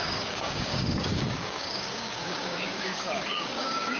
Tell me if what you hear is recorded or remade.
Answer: remade